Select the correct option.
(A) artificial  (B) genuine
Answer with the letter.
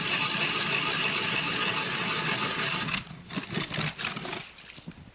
B